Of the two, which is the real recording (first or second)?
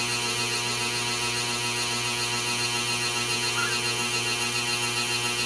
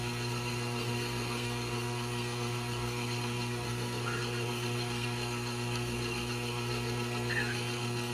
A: first